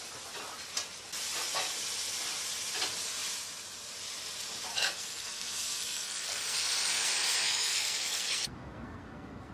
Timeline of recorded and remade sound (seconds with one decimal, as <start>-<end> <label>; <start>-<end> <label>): 0.0-4.7 recorded; 4.7-9.5 remade